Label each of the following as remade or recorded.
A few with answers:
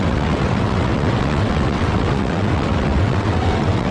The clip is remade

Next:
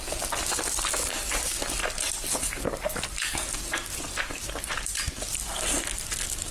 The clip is recorded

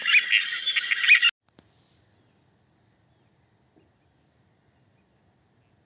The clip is recorded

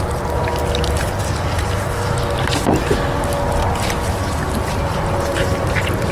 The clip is recorded